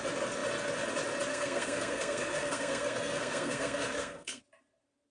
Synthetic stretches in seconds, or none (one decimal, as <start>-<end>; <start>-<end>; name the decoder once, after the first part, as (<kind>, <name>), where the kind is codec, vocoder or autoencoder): 1.3-4.4 (codec, SNAC)

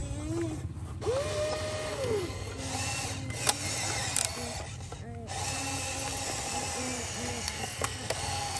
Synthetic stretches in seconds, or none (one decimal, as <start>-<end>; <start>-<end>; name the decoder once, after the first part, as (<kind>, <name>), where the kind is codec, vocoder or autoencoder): 1.9-2.7 (codec, SNAC); 7.3-8.6